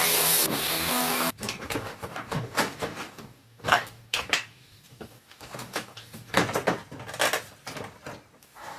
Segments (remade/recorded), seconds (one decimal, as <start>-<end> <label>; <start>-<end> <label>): 0.0-6.4 remade; 6.4-8.4 recorded; 8.4-8.8 remade